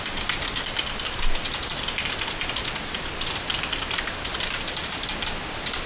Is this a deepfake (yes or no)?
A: no